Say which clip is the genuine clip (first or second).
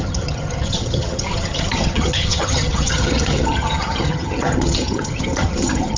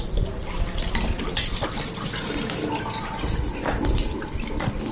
second